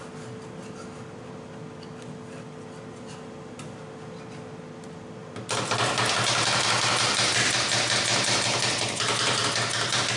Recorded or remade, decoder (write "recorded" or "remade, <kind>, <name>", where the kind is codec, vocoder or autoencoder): recorded